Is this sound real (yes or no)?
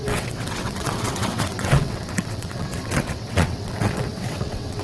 no